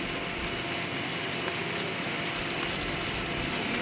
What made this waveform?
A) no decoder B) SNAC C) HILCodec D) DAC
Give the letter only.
A